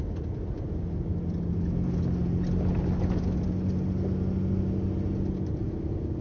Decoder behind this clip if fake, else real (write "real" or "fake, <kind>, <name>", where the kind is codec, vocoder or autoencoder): real